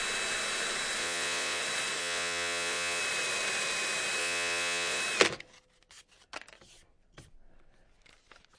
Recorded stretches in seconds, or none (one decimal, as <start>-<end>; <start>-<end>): 0.0-1.0; 1.6-2.0; 3.0-4.2; 5.0-8.6